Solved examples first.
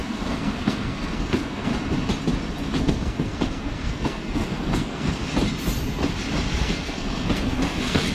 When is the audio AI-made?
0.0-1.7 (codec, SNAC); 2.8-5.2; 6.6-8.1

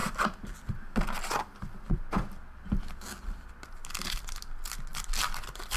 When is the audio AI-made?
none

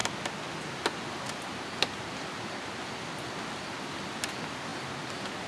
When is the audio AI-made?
none

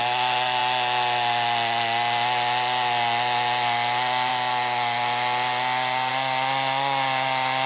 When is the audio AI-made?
none